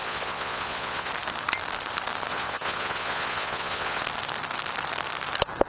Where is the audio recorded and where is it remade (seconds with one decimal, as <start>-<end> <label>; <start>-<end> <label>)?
0.0-1.1 remade; 1.1-2.3 recorded; 2.3-4.0 remade; 4.0-5.7 recorded